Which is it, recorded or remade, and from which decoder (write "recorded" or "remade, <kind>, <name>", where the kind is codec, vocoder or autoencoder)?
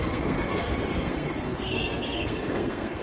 remade, codec, SNAC